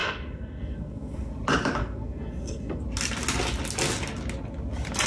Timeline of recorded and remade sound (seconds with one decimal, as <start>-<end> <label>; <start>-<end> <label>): 0.0-1.3 remade; 1.3-1.8 recorded; 1.8-2.8 remade; 2.8-5.1 recorded